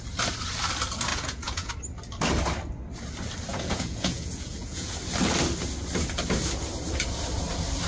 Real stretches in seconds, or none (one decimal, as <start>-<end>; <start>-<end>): 0.0-1.1; 1.7-3.5; 4.9-7.9